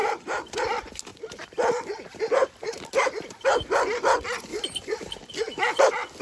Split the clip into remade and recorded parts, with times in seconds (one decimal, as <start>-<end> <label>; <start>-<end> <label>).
0.0-0.6 remade; 0.6-2.6 recorded; 2.6-3.2 remade; 3.2-6.2 recorded